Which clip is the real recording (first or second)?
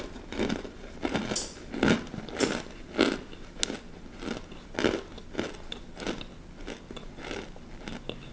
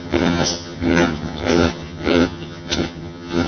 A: first